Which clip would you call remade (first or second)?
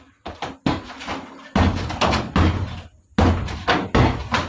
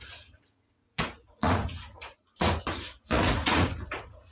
second